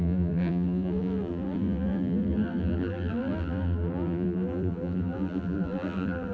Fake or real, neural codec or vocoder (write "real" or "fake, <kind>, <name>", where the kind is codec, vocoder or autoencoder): fake, vocoder, BigVGAN v2